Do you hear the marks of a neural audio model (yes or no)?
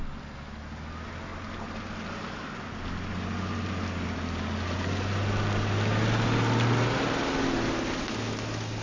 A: no